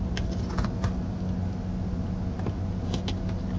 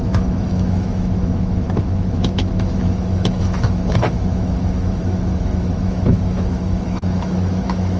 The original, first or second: first